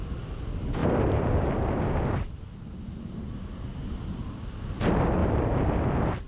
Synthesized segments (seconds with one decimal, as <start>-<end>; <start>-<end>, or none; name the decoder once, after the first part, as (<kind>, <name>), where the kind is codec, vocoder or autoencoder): 0.8-4.0 (vocoder, BigVGAN v2); 5.2-5.7

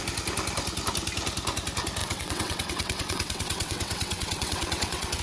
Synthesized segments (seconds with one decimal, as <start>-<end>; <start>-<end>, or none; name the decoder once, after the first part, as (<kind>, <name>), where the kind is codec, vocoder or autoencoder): 2.0-5.2 (vocoder, WaveNeXt)

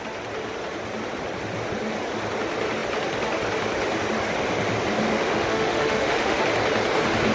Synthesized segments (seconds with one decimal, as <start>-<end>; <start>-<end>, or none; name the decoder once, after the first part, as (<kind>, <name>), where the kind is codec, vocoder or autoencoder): 5.1-6.4 (autoencoder, DAC-VAE)

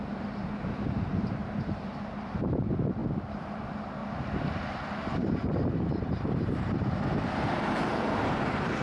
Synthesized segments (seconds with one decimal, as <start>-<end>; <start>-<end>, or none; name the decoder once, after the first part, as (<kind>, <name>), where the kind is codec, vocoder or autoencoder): 0.0-4.0 (vocoder, BigVGAN v2); 5.0-8.8